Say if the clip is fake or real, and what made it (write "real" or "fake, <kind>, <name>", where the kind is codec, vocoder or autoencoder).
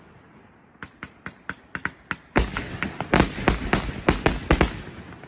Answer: real